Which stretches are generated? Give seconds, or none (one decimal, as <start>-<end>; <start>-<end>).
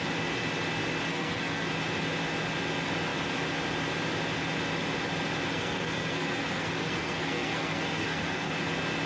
1.1-1.7; 5.5-8.5